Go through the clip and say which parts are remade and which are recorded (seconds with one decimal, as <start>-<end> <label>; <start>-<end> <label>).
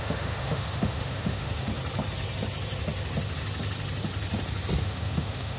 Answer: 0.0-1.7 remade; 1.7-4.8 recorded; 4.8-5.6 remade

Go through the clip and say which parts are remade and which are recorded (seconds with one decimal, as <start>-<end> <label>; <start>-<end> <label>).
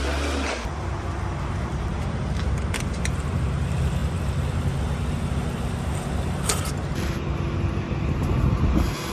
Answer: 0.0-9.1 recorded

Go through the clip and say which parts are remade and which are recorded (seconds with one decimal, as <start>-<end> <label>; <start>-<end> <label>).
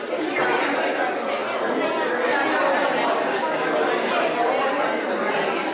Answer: 0.0-5.7 recorded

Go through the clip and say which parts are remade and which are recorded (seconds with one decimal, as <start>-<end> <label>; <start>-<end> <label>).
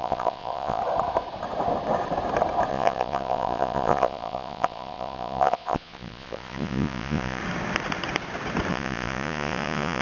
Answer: 0.0-0.8 remade; 0.8-2.7 recorded; 2.7-7.4 remade; 7.4-8.7 recorded; 8.7-10.0 remade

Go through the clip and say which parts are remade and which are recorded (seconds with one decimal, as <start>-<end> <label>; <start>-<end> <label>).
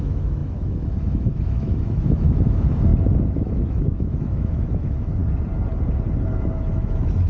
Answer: 0.0-2.9 remade; 2.9-3.4 recorded; 3.4-5.2 remade; 5.2-6.3 recorded; 6.3-7.3 remade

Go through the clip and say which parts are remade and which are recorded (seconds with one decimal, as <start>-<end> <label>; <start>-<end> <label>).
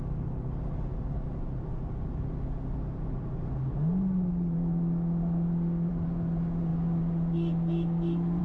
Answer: 0.0-8.4 recorded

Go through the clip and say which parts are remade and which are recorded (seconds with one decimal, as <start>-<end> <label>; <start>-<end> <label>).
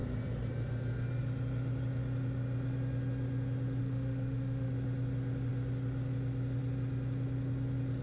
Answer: 0.0-3.8 recorded; 3.8-4.7 remade; 4.7-8.0 recorded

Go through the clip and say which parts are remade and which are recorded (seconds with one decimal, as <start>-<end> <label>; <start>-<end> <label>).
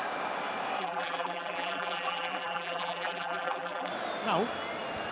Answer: 0.0-0.8 recorded; 0.8-3.9 remade; 3.9-5.1 recorded